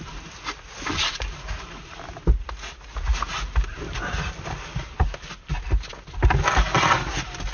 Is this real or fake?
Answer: real